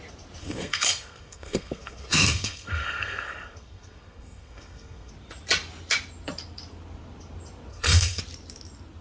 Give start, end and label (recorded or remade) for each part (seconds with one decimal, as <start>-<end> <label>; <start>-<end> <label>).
0.0-0.4 recorded; 0.4-5.1 remade; 5.1-7.7 recorded; 7.7-8.2 remade; 8.2-9.0 recorded